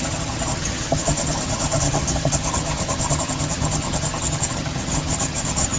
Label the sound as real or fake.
fake